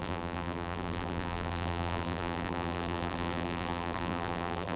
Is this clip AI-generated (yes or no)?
yes